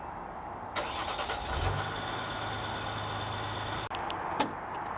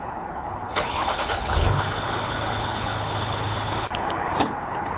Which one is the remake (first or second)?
second